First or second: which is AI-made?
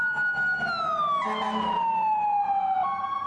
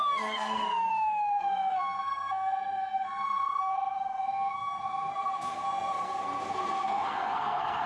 second